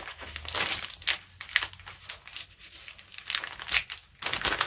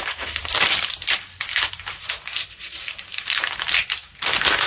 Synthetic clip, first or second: second